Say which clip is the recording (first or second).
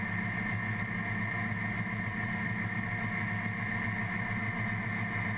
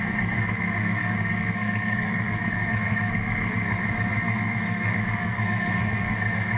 first